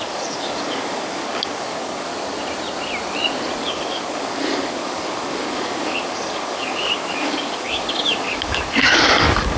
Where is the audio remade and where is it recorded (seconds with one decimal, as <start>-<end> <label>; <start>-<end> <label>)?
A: 0.0-2.1 remade; 2.1-3.6 recorded; 3.6-9.6 remade